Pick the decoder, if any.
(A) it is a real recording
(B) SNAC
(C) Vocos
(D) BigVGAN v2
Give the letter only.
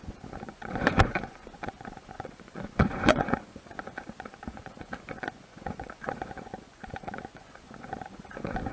C